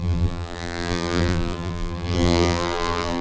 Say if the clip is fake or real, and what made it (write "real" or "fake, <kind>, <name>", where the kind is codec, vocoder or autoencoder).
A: fake, vocoder, BigVGAN v2